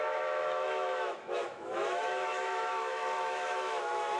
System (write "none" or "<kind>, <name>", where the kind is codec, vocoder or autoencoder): autoencoder, DAC-VAE